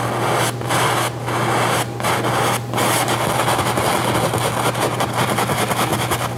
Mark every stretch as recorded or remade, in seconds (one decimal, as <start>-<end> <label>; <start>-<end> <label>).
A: 0.0-6.4 recorded